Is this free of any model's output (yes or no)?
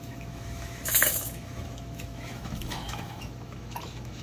no